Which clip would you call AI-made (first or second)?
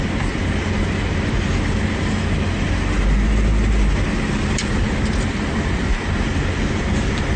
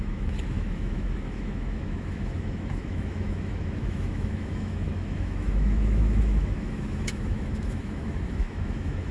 second